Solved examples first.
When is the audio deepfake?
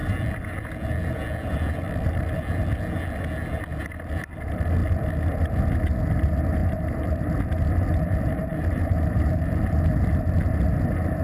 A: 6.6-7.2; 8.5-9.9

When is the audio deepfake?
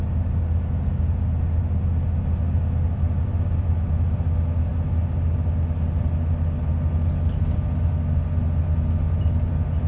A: none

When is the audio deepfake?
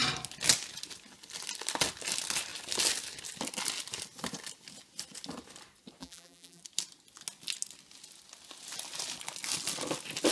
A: 6.0-6.6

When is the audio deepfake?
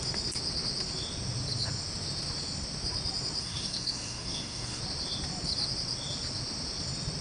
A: 3.4-4.8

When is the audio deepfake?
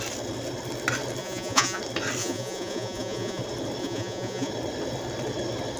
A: 1.2-1.8; 2.2-3.4; 3.8-4.5